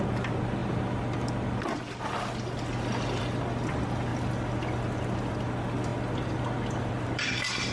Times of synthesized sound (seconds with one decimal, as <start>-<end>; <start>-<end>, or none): none